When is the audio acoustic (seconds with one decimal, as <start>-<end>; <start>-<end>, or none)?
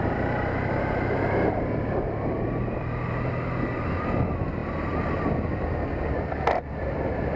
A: 0.0-7.4